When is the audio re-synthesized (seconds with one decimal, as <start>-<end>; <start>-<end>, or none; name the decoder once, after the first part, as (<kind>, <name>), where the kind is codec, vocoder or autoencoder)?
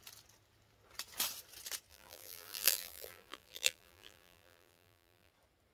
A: 1.9-5.3 (vocoder, BigVGAN v2)